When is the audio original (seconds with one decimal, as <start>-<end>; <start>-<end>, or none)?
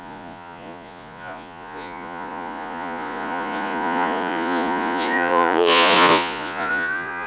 none